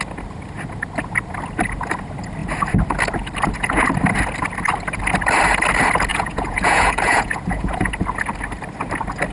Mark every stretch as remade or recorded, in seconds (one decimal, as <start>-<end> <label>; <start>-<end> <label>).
0.0-6.1 recorded; 6.1-7.9 remade; 7.9-9.3 recorded